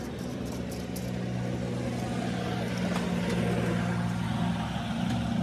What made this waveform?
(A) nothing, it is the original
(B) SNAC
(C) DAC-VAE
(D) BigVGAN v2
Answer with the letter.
A